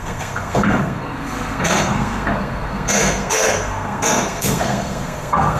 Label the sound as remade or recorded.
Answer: remade